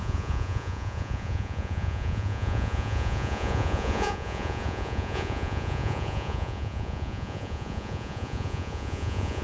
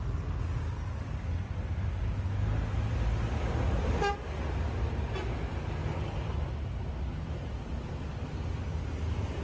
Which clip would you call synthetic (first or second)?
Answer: first